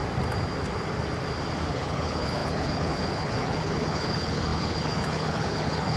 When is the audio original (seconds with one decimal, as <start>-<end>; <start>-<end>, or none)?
0.0-1.7